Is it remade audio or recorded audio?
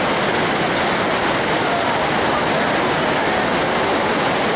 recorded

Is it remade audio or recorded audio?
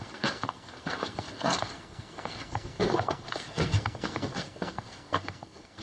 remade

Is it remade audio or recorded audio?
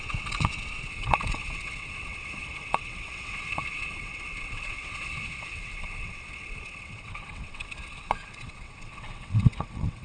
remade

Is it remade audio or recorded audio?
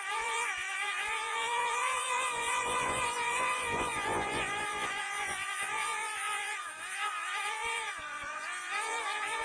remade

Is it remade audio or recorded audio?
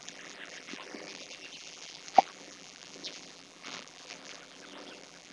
remade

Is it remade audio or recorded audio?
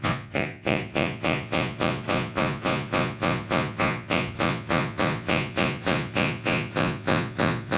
remade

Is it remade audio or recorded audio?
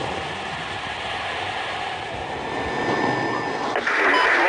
recorded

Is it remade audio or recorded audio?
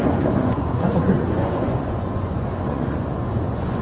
remade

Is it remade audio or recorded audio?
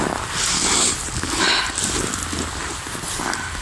recorded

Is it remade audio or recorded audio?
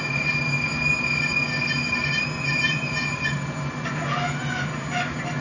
recorded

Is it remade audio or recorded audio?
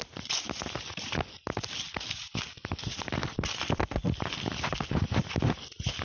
recorded